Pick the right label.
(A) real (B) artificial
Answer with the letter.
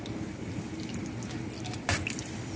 A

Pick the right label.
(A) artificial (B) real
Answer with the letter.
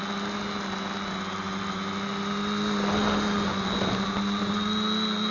B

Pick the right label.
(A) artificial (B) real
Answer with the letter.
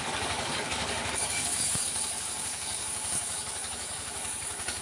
A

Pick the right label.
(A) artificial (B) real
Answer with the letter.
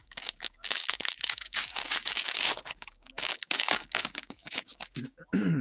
A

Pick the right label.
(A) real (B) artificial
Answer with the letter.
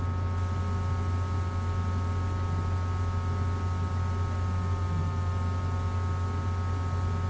A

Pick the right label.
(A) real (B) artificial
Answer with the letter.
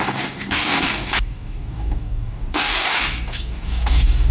B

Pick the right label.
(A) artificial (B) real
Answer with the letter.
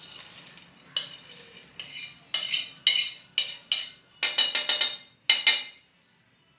B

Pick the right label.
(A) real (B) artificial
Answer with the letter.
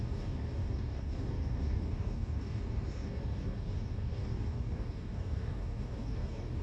B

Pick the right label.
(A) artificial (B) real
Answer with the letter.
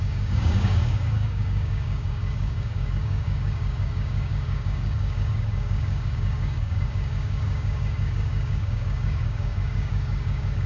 A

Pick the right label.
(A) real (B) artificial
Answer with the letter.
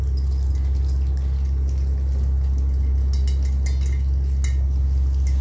A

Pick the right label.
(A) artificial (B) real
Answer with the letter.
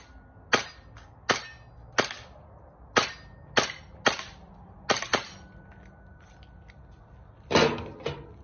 B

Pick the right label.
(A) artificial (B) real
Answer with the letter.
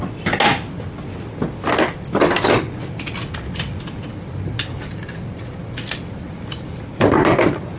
B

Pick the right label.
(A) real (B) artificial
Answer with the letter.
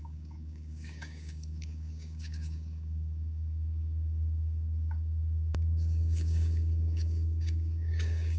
B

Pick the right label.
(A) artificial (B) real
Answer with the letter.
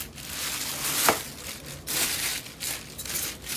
B